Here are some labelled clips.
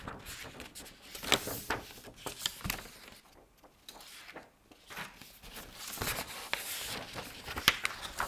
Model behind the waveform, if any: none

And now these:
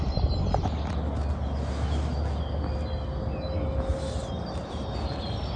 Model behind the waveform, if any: none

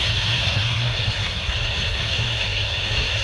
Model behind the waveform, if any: codec, SNAC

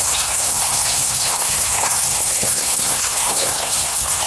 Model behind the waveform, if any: codec, SNAC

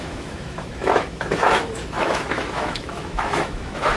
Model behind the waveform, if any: autoencoder, DAC-VAE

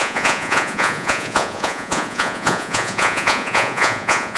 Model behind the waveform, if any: vocoder, Vocos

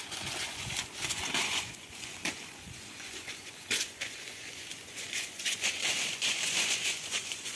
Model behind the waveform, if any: vocoder, Vocos